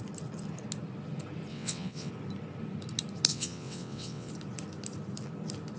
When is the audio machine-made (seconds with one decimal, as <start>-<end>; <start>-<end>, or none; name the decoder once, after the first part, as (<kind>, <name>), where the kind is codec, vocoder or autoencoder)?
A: 1.5-2.1 (vocoder, WaveNeXt); 3.3-4.3